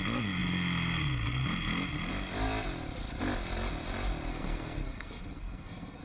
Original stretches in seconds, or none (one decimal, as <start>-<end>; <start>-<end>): 0.0-4.3